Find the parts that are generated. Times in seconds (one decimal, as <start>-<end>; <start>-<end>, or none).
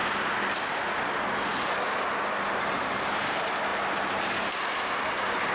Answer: none